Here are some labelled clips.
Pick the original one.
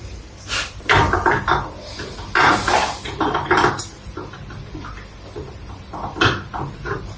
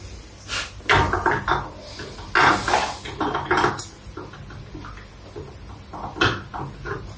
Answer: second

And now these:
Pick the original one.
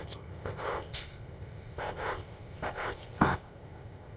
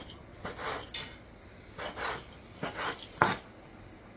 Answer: second